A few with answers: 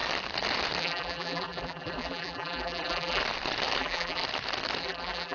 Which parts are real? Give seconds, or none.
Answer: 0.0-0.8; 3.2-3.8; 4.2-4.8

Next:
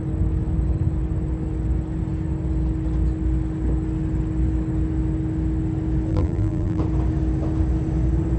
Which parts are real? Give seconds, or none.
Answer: 0.0-6.1; 6.8-8.4